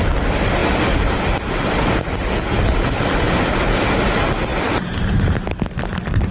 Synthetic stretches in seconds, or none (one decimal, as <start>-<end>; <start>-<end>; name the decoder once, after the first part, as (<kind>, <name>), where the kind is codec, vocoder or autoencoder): none